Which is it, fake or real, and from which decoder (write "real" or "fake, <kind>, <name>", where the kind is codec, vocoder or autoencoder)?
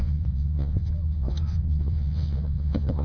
fake, vocoder, Vocos